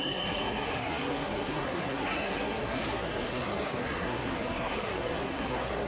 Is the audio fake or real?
fake